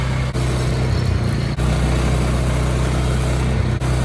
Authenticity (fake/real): real